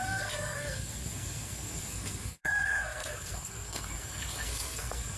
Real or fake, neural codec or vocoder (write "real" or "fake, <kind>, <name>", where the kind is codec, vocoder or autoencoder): fake, codec, SNAC